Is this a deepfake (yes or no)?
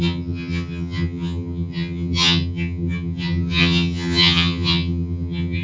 yes